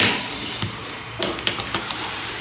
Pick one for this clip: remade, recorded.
recorded